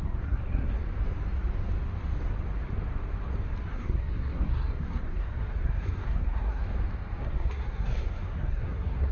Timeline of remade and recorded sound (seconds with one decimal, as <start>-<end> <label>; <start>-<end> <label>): 0.0-0.8 remade; 0.8-3.7 recorded; 3.7-6.6 remade; 6.6-7.2 recorded; 7.2-9.1 remade